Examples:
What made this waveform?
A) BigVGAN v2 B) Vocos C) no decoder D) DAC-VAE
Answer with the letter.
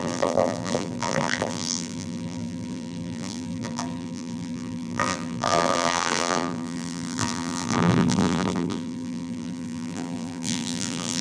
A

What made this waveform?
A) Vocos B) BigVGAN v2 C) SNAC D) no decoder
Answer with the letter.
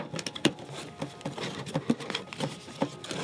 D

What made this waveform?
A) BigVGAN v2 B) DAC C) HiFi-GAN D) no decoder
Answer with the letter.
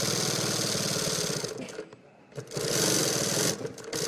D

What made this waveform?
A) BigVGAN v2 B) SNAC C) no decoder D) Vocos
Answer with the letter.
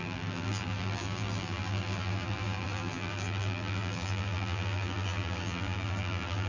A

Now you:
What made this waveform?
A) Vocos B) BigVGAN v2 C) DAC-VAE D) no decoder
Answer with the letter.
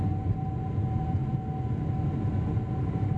D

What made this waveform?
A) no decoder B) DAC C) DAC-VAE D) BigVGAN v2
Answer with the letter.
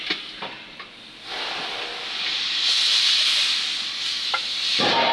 A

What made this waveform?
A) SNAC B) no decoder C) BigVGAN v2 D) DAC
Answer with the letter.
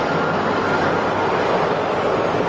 C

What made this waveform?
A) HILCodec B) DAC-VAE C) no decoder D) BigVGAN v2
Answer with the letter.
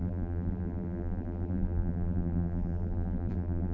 D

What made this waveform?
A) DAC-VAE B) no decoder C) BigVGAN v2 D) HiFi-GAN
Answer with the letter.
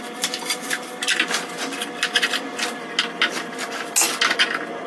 B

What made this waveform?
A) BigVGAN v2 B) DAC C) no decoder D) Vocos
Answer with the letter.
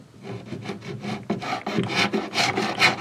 C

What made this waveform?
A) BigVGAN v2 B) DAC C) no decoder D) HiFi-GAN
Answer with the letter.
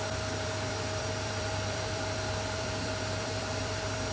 A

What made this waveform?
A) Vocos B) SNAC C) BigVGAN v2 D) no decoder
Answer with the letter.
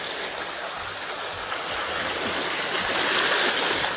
D